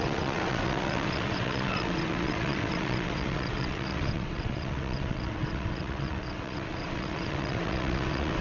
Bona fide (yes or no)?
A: no